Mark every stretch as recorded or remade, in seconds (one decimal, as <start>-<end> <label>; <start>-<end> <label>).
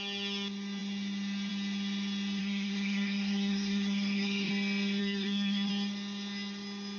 0.0-2.4 recorded; 2.4-4.5 remade; 4.5-5.0 recorded; 5.0-5.7 remade; 5.7-7.0 recorded